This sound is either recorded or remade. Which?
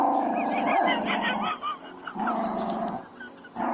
recorded